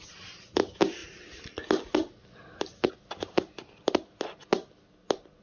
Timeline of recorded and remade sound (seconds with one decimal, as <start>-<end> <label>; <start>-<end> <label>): 0.0-5.4 recorded